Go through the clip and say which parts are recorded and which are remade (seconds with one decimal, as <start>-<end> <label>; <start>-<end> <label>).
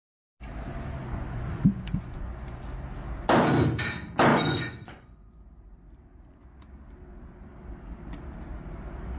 0.0-1.0 recorded; 1.0-2.6 remade; 2.6-4.3 recorded; 4.3-5.4 remade; 5.4-9.2 recorded